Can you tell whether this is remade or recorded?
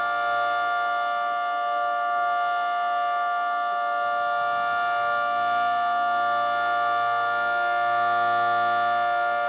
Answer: recorded